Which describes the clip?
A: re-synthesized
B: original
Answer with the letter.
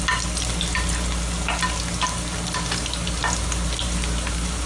B